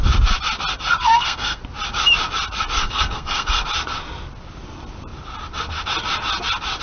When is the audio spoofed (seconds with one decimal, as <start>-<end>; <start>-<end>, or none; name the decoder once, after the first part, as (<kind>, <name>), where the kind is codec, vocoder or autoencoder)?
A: 1.0-1.6 (codec, SNAC); 2.8-3.6